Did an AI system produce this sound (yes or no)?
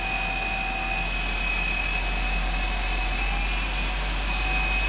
no